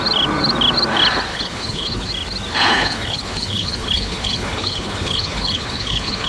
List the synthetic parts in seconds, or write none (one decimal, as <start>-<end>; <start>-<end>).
1.3-2.1; 2.5-6.3